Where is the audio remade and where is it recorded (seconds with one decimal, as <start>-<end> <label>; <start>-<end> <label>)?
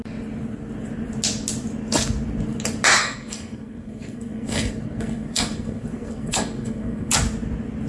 0.0-3.0 recorded; 3.0-7.1 remade; 7.1-7.9 recorded